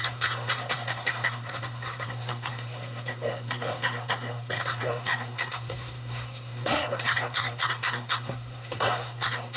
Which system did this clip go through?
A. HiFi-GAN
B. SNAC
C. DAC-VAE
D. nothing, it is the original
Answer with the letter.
B